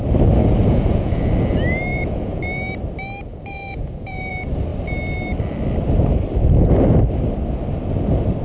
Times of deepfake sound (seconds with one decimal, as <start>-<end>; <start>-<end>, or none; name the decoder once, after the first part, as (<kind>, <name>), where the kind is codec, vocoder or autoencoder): 0.4-1.3 (vocoder, Vocos); 1.9-2.4; 3.3-4.3